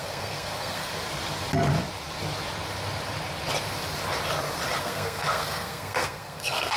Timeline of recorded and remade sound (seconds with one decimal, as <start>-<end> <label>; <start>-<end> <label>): 0.0-0.9 remade; 0.9-4.8 recorded; 4.8-6.8 remade